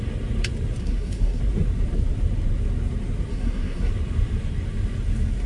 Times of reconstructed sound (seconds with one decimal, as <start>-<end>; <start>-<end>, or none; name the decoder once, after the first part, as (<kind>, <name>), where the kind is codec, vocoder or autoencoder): 0.8-1.4 (codec, SNAC); 3.3-3.9